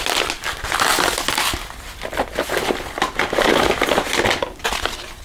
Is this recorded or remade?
recorded